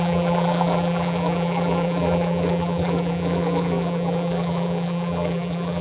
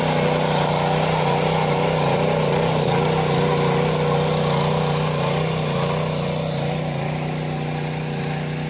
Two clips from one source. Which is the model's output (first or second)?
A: first